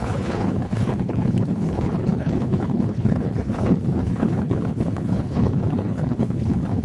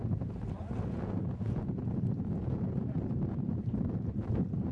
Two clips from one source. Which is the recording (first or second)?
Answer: second